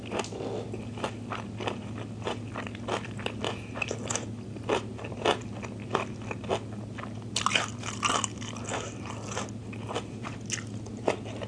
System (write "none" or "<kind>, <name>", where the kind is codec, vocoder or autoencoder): none